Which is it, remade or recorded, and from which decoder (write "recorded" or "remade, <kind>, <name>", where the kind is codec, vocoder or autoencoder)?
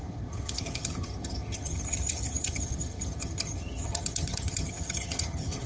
remade, vocoder, HiFi-GAN